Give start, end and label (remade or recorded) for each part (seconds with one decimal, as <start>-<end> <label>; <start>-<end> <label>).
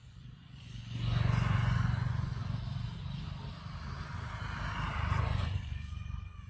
0.0-2.4 remade; 2.4-5.2 recorded; 5.2-6.5 remade